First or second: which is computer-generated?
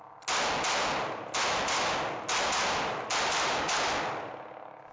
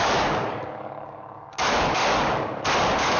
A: second